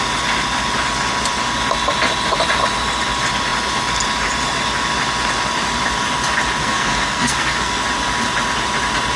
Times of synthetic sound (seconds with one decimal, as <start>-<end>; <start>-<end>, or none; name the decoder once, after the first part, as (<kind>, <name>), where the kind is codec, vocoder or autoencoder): 6.6-7.8 (codec, SNAC)